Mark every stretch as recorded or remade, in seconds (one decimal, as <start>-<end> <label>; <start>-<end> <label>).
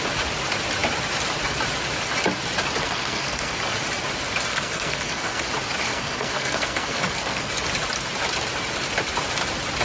0.0-2.8 recorded; 2.8-3.5 remade; 3.5-4.5 recorded; 4.5-5.4 remade; 5.4-5.9 recorded; 5.9-7.5 remade; 7.5-9.8 recorded